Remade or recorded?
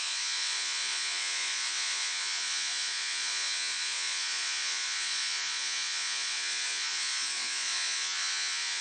remade